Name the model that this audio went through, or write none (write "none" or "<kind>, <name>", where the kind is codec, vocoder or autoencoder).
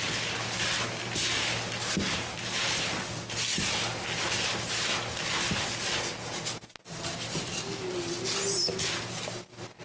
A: none